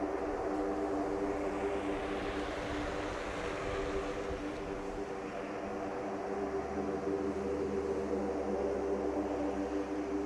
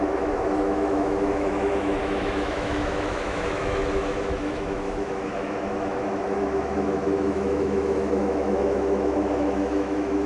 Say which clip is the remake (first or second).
second